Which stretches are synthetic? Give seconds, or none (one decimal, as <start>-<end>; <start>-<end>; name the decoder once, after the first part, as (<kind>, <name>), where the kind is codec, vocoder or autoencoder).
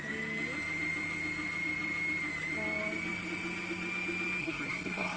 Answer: 4.4-5.2 (codec, SNAC)